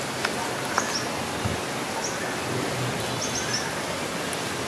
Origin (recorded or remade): recorded